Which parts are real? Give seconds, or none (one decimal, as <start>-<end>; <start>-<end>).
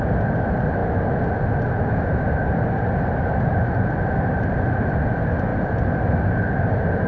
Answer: 0.0-7.1